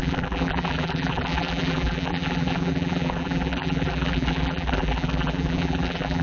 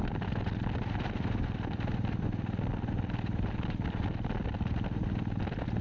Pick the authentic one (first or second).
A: second